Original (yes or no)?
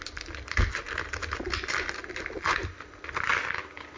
yes